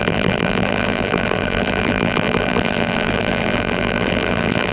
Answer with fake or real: fake